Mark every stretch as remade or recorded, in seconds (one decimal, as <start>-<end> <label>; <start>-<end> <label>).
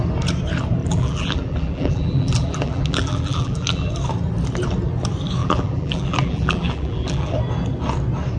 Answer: 0.0-0.8 recorded; 0.8-3.9 remade; 3.9-5.4 recorded; 5.4-7.3 remade; 7.3-8.4 recorded